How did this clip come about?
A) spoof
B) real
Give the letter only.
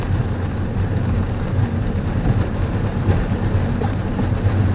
A